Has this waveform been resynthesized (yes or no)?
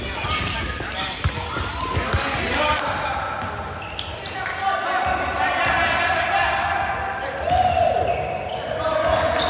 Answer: no